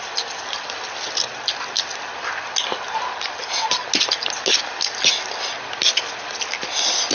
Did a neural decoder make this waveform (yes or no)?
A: no